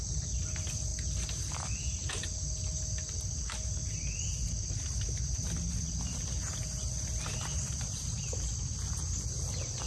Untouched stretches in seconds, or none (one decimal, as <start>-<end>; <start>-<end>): 0.0-7.5; 8.2-9.9